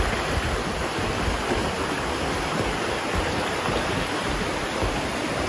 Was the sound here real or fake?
real